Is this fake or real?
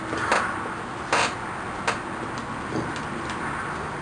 real